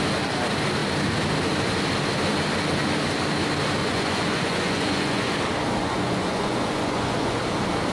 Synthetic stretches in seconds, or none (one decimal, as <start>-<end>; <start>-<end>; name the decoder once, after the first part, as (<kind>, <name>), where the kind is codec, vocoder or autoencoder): 3.8-5.3 (vocoder, Vocos); 5.8-7.4